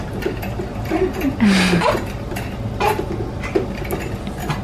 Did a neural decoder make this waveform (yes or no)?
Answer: no